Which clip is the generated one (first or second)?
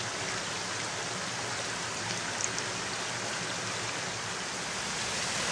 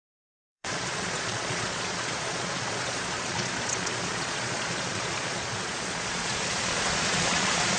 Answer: second